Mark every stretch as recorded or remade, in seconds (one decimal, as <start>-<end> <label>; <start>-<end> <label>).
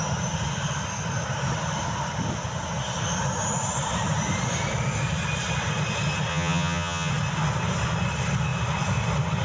0.0-6.3 recorded; 6.3-7.1 remade; 7.1-9.4 recorded